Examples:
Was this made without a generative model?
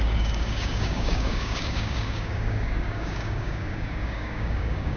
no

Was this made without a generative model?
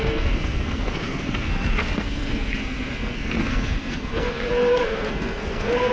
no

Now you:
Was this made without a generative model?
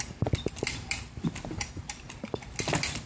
yes